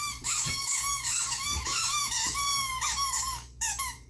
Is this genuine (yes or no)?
no